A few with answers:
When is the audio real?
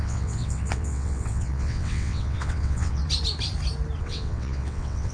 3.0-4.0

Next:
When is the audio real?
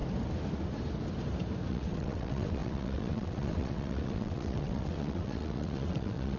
0.0-1.7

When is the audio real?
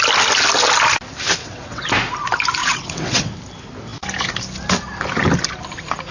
0.0-1.4; 1.9-2.6; 3.3-6.1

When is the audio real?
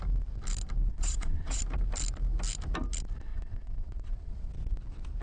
0.0-0.9; 1.6-3.3; 4.5-5.2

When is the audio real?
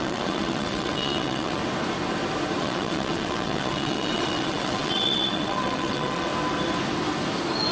1.6-2.6; 6.3-7.7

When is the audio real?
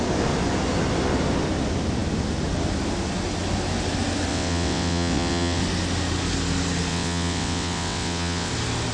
0.0-4.3; 5.6-6.9; 8.5-8.9